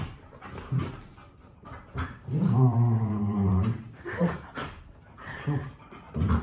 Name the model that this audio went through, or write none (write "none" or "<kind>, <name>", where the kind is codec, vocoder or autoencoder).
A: vocoder, BigVGAN v2